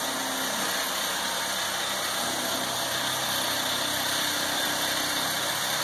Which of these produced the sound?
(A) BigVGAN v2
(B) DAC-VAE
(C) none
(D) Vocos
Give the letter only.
C